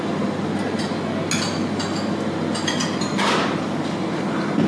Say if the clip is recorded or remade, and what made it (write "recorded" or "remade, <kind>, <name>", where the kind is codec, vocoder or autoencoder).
recorded